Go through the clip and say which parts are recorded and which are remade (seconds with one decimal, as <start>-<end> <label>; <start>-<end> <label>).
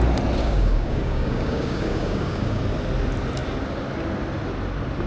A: 0.0-0.4 recorded; 0.4-2.6 remade; 2.6-5.1 recorded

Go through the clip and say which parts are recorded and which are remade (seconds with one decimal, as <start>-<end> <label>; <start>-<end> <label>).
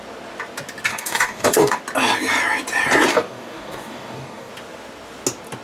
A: 0.0-0.9 recorded; 0.9-1.8 remade; 1.8-3.1 recorded; 3.1-4.5 remade; 4.5-5.6 recorded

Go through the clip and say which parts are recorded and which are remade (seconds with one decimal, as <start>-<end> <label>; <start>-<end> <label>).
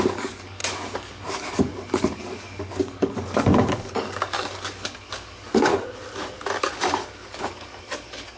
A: 0.0-5.7 remade; 5.7-6.6 recorded; 6.6-8.4 remade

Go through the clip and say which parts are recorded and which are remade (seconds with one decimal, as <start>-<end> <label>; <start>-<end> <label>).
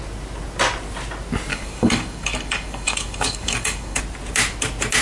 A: 0.0-1.5 recorded; 1.5-4.0 remade; 4.0-5.0 recorded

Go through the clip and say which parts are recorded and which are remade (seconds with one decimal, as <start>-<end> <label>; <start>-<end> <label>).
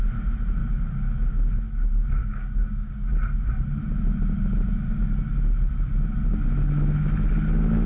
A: 0.0-2.2 recorded; 2.2-2.9 remade; 2.9-7.9 recorded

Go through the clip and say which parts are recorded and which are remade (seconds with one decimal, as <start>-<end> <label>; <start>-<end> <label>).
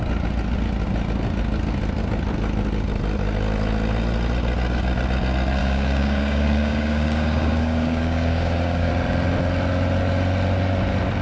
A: 0.0-5.6 recorded; 5.6-8.9 remade; 8.9-11.2 recorded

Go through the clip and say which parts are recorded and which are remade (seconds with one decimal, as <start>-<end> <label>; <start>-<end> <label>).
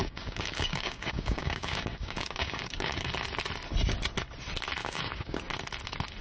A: 0.0-3.1 remade; 3.1-4.8 recorded; 4.8-5.4 remade; 5.4-6.2 recorded